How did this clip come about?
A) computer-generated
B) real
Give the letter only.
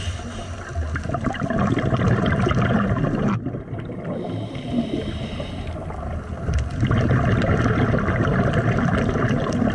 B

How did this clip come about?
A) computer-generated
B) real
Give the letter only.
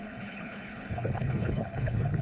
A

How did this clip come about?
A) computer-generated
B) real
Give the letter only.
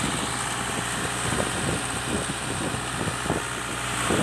B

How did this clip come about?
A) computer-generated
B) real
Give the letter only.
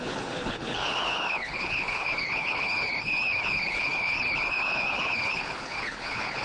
A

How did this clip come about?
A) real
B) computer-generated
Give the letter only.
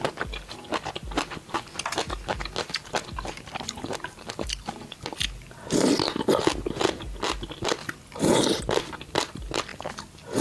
A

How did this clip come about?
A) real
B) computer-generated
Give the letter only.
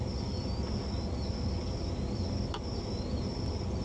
A